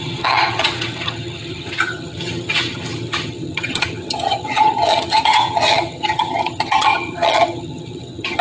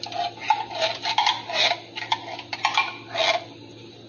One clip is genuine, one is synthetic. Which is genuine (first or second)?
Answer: second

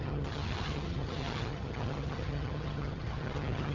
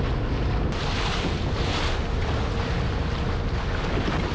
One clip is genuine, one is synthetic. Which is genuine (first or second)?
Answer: second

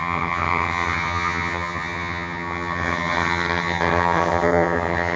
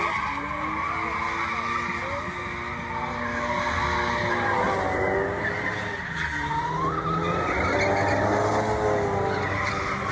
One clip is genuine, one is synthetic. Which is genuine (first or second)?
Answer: second